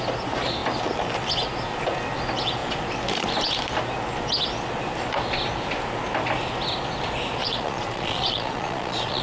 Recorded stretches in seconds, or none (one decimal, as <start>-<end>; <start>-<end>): 0.0-7.4